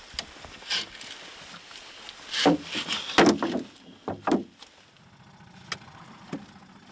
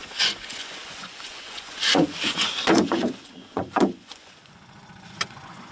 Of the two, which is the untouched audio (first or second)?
first